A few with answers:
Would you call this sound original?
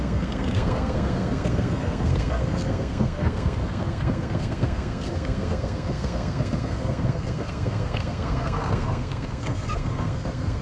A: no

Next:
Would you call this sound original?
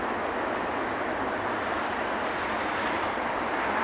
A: yes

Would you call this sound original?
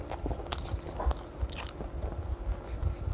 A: yes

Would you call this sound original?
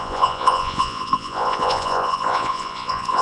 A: no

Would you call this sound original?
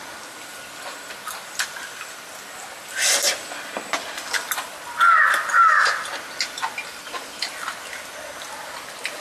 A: yes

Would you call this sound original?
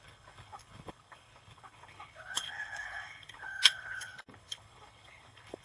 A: no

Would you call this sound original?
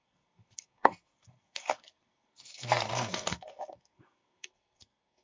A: no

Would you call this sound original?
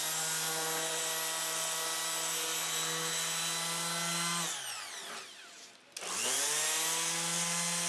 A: yes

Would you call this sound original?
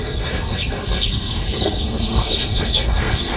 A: no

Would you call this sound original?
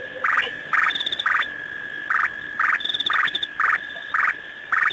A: yes